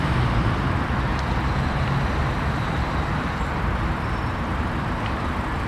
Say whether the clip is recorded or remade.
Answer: remade